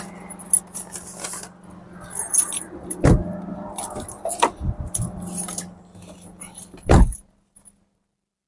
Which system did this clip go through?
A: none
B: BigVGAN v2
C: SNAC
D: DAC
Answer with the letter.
A